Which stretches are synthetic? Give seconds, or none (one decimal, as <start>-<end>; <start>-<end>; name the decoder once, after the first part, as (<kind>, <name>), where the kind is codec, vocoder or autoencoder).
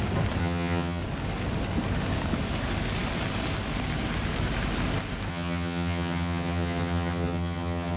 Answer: 0.4-1.0 (vocoder, HiFi-GAN); 5.3-8.0